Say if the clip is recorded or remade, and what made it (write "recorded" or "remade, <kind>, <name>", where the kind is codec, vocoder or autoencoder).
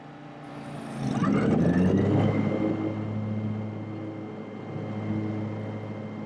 recorded